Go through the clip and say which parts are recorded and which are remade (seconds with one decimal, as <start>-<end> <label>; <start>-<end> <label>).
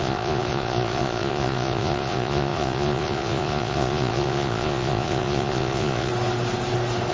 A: 0.0-6.1 remade; 6.1-7.1 recorded